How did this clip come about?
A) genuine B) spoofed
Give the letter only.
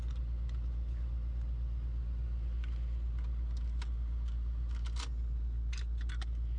A